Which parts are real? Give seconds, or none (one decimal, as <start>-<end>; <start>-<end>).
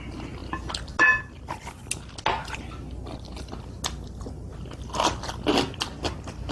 0.0-6.5